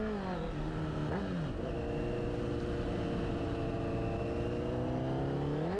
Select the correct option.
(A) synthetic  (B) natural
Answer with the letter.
B